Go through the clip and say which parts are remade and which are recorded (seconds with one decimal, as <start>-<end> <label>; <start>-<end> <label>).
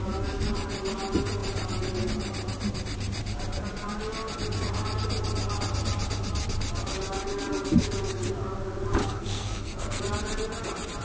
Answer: 0.0-9.0 recorded; 9.0-10.0 remade; 10.0-11.0 recorded